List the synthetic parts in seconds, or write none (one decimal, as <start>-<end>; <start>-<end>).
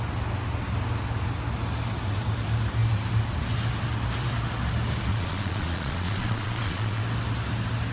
5.1-7.0